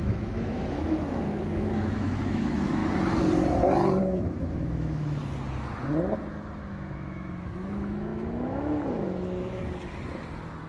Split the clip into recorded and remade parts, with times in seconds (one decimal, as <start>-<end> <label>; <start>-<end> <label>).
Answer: 0.0-2.8 remade; 2.8-4.0 recorded; 4.0-5.2 remade; 5.2-6.7 recorded; 6.7-9.6 remade; 9.6-10.7 recorded